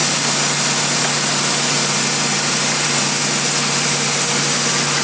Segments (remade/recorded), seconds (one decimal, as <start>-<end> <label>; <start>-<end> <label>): 0.0-5.0 recorded